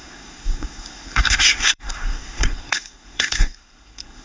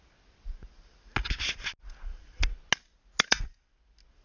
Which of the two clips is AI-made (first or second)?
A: first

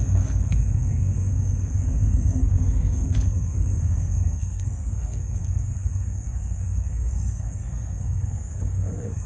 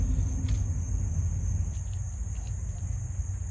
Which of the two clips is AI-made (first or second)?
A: first